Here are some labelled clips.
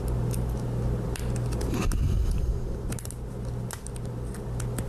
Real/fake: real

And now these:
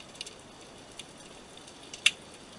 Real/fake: real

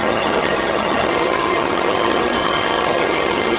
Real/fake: fake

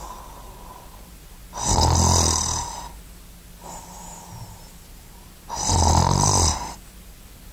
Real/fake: real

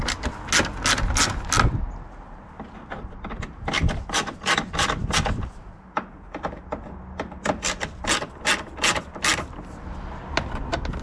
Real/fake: real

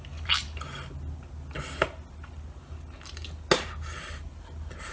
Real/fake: real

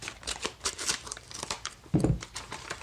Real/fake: fake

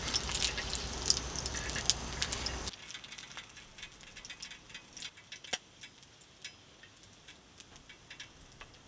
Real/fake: real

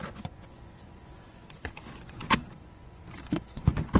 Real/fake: fake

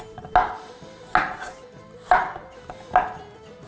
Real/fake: real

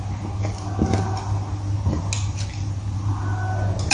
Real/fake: real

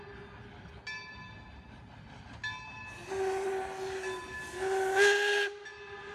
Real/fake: real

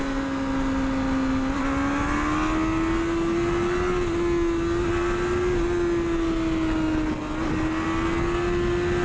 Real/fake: real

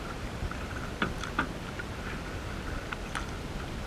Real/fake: real